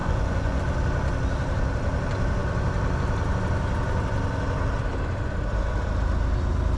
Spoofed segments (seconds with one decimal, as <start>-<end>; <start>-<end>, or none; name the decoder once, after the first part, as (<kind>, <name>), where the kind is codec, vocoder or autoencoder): 0.0-0.6 (vocoder, Vocos)